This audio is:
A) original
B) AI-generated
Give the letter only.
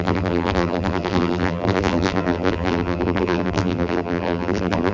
B